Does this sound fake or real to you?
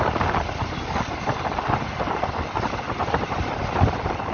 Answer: real